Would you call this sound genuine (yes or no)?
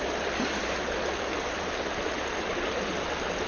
yes